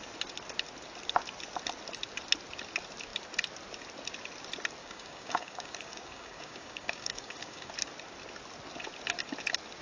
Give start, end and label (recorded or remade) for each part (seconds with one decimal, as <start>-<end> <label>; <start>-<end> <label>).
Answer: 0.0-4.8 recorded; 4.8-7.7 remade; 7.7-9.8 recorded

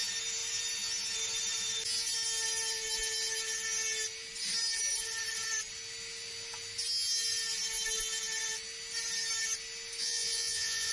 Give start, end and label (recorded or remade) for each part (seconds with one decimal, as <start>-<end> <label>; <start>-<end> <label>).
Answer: 0.0-10.0 recorded; 10.0-10.9 remade

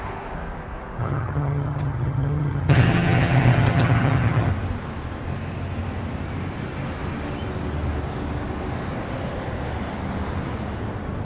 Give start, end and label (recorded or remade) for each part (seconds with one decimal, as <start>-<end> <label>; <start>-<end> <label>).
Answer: 0.0-1.0 recorded; 1.0-4.5 remade; 4.5-11.2 recorded